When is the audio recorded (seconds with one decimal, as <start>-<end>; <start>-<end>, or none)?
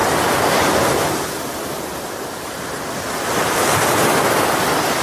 0.0-5.0